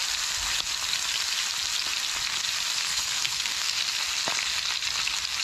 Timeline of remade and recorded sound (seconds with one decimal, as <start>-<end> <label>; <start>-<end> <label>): 0.0-2.8 recorded; 2.8-3.8 remade; 3.8-5.4 recorded